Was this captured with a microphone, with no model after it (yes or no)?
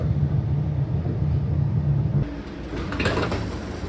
yes